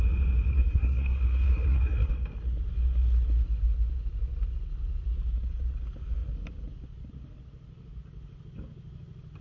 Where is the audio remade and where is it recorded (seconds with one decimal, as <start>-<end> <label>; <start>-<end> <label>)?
0.0-0.5 recorded; 0.5-2.1 remade; 2.1-9.4 recorded